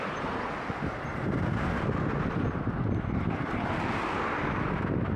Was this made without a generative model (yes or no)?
yes